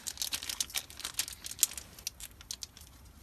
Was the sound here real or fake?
real